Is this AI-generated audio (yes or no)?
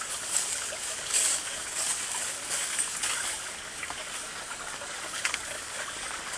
yes